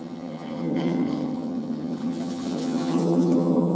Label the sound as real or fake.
fake